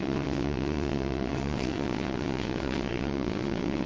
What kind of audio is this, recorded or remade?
remade